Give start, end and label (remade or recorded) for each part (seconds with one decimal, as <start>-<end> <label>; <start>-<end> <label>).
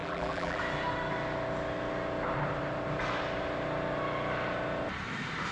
0.0-0.6 remade; 0.6-5.5 recorded